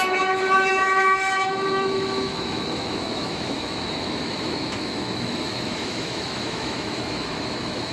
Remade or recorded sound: remade